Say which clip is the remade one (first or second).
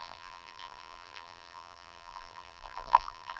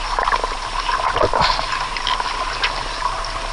first